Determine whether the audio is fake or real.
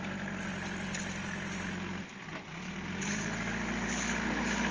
real